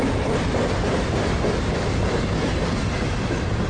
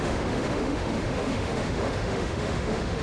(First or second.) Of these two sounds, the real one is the first